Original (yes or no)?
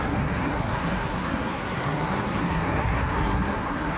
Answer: no